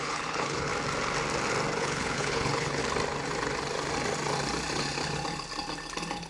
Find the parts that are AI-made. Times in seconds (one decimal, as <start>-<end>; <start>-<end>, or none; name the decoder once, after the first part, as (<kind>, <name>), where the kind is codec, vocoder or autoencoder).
0.0-0.7 (codec, HILCodec); 1.8-2.8